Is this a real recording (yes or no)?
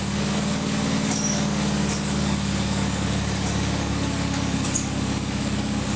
no